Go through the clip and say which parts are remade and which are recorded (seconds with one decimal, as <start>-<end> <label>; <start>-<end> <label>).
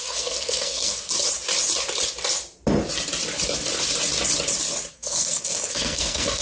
0.0-1.1 remade; 1.1-4.9 recorded; 4.9-6.4 remade